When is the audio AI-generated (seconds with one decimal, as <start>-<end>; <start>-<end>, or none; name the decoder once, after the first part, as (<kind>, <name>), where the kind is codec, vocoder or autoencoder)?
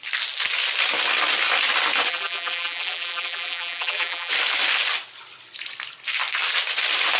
2.1-4.3 (vocoder, BigVGAN v2)